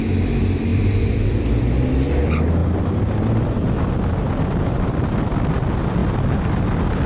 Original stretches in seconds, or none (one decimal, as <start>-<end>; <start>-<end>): 0.0-0.7; 1.6-6.0